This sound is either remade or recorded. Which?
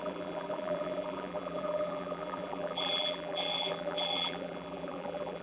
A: remade